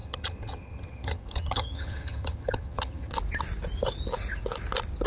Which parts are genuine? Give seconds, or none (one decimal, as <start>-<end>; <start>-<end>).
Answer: 3.1-5.1